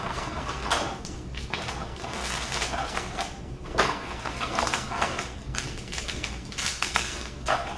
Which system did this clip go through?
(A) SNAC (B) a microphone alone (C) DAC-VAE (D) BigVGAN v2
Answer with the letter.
A